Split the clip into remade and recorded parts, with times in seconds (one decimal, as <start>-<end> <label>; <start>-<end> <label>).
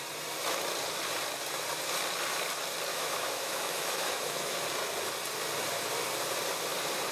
0.0-2.9 recorded; 2.9-4.6 remade; 4.6-7.1 recorded